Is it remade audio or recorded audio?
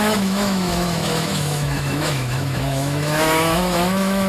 remade